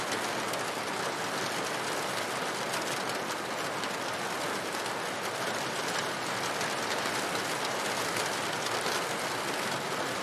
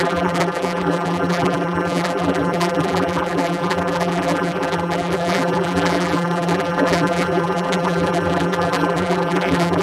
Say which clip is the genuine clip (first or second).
first